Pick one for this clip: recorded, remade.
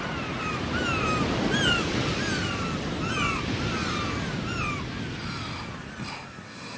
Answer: recorded